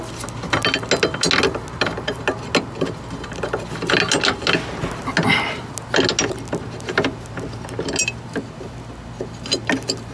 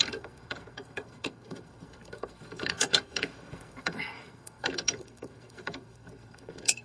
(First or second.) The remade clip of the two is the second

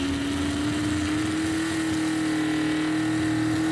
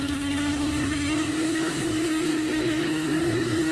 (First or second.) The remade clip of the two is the second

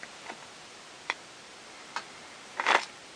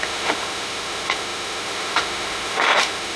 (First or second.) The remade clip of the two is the second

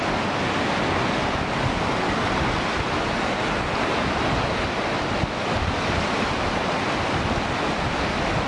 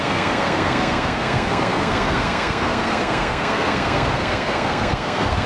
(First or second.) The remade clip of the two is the second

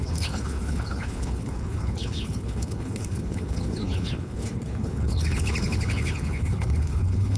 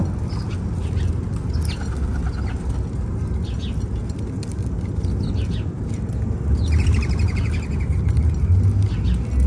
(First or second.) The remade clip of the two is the first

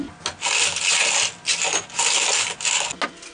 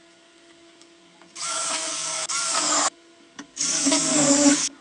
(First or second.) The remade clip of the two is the second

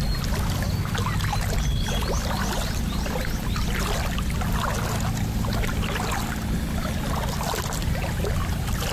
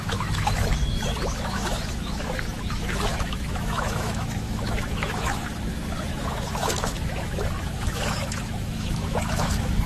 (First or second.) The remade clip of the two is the second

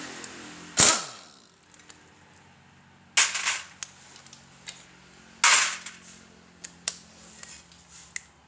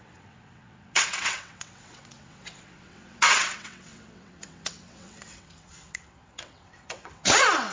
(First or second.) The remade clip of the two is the second